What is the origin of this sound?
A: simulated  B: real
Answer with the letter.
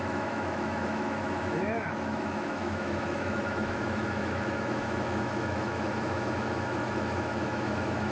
A